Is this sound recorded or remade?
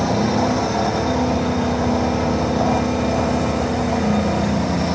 recorded